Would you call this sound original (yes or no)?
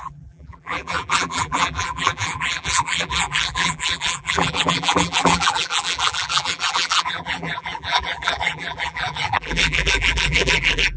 no